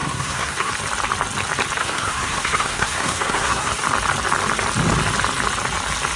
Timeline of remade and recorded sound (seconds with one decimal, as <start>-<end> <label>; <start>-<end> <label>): 0.0-0.7 remade; 0.7-1.8 recorded; 1.8-3.7 remade; 3.7-6.2 recorded